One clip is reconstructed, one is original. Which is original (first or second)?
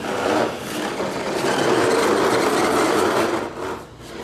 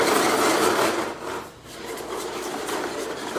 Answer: first